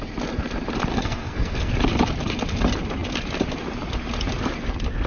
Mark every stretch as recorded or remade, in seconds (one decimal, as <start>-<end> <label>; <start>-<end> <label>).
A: 0.0-0.9 recorded; 0.9-1.7 remade; 1.7-5.1 recorded